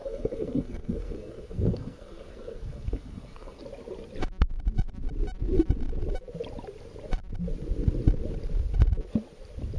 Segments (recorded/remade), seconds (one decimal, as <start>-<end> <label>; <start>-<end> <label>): 0.0-3.6 remade; 3.6-9.8 recorded